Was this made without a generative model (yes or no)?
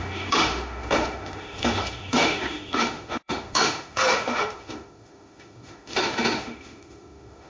no